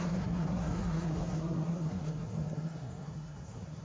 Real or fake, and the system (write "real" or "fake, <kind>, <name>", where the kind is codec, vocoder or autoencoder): fake, codec, SNAC